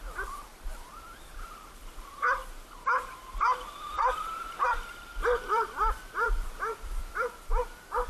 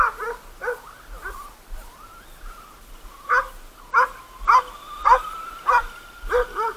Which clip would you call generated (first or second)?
first